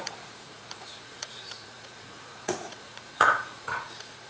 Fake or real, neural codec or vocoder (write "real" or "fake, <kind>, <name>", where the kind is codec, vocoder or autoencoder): fake, vocoder, Vocos